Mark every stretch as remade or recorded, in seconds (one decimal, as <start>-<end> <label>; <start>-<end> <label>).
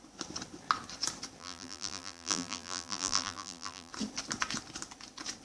0.0-1.4 recorded; 1.4-3.9 remade; 3.9-5.4 recorded